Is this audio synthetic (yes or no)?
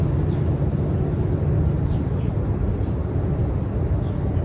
no